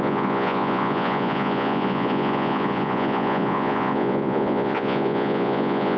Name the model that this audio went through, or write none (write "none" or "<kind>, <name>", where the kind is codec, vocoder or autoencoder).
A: vocoder, Vocos